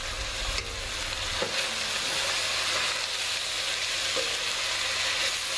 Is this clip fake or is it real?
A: real